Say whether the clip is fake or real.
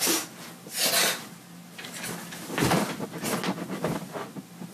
real